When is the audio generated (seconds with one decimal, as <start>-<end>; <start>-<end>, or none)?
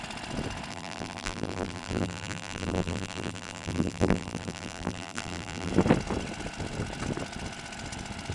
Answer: 0.7-5.7